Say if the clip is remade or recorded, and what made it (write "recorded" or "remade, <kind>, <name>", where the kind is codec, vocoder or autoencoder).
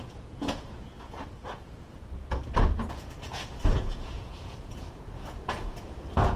remade, vocoder, Vocos